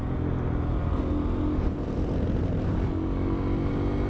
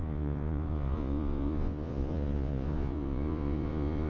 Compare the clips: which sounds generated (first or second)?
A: second